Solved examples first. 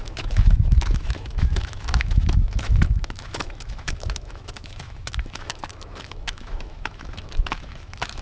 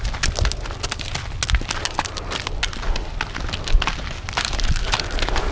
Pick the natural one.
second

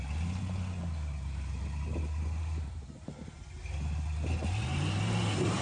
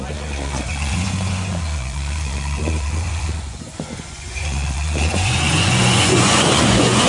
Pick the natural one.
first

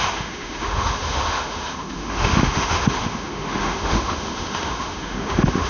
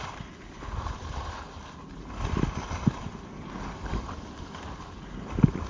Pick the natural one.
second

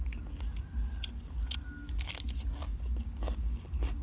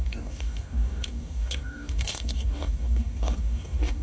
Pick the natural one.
first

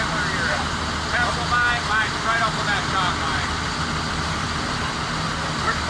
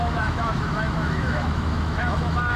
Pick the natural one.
first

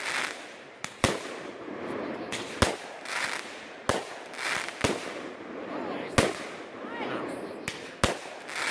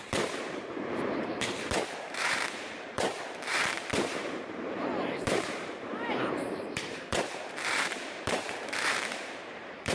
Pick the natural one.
first